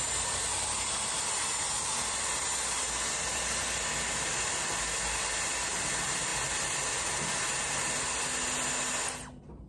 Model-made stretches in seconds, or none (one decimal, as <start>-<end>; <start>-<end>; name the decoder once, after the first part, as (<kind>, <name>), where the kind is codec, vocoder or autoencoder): none